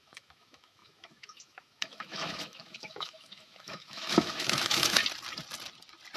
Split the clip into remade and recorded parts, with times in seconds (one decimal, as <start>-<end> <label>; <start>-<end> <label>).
0.0-5.0 remade; 5.0-6.2 recorded